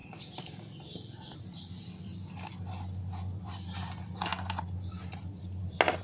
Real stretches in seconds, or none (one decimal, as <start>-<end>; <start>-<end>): 2.5-6.0